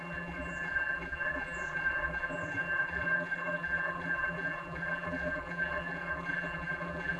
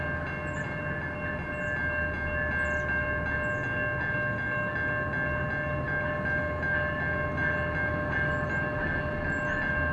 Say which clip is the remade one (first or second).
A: first